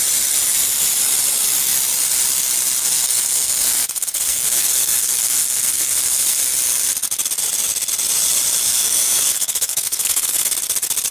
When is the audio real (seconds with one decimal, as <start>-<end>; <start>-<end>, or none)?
0.0-2.8; 6.4-8.7; 10.5-11.1